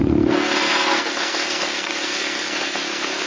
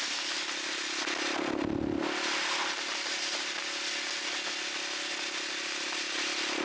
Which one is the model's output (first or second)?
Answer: first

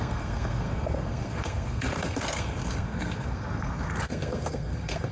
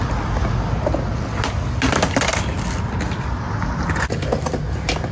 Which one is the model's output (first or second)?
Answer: first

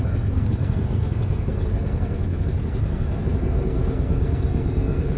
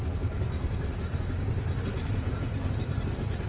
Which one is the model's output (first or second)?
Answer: first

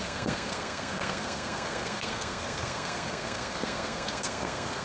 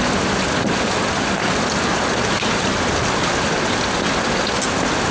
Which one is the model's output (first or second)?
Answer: first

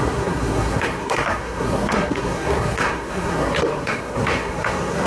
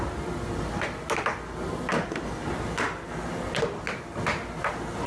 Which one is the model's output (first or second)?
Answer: first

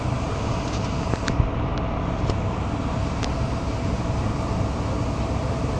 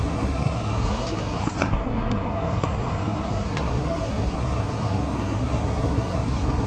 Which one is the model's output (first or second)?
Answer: second